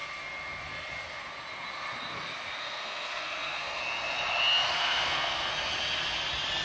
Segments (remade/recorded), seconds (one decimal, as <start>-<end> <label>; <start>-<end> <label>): 0.0-2.6 recorded; 2.6-3.8 remade; 3.8-4.7 recorded; 4.7-5.5 remade; 5.5-6.6 recorded

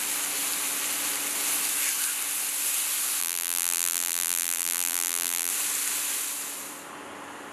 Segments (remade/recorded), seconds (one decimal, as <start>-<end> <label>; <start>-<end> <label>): 0.0-3.2 recorded; 3.2-5.5 remade; 5.5-7.5 recorded

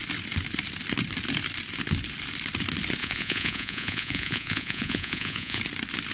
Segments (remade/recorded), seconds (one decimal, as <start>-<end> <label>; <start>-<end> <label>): 0.0-3.0 recorded; 3.0-5.6 remade; 5.6-6.1 recorded

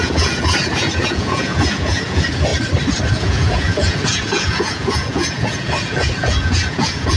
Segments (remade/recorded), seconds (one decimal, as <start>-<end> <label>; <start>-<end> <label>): 0.0-2.5 remade; 2.5-3.1 recorded; 3.1-7.2 remade

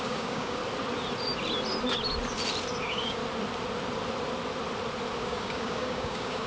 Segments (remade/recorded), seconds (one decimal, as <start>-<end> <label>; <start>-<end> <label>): 0.0-0.6 remade; 0.6-2.8 recorded; 2.8-3.2 remade; 3.2-5.2 recorded; 5.2-6.5 remade

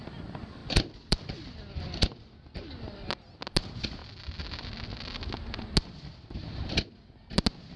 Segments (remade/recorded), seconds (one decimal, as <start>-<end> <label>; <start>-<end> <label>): 0.0-0.6 recorded; 0.6-1.7 remade; 1.7-7.8 recorded

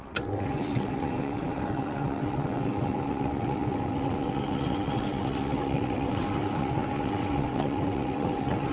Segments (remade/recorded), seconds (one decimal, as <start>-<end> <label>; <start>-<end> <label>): 0.0-8.7 remade